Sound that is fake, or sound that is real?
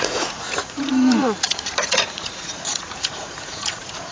fake